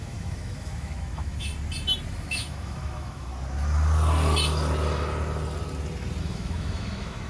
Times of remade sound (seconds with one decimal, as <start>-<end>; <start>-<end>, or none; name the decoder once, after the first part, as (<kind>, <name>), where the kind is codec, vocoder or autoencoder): 0.0-1.5 (autoencoder, DAC-VAE); 2.1-3.3; 6.2-7.3